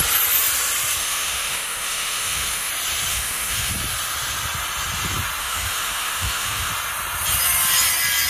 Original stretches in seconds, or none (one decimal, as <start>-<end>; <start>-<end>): 0.0-1.0; 2.7-3.1; 3.7-5.4; 6.7-8.3